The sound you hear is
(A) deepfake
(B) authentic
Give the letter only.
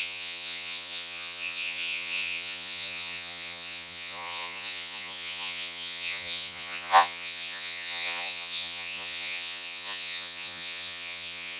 A